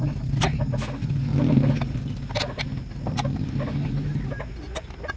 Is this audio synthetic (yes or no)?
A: no